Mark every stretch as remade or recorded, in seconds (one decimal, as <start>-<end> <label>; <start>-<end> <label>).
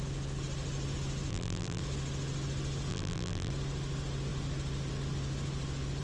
0.0-1.3 recorded; 1.3-1.8 remade; 1.8-2.9 recorded; 2.9-3.5 remade; 3.5-6.0 recorded